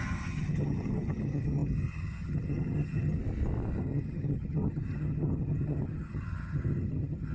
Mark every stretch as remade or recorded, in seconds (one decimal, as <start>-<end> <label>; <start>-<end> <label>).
0.0-3.2 remade; 3.2-3.8 recorded; 3.8-7.3 remade